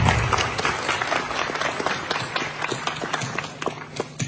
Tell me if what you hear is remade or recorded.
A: recorded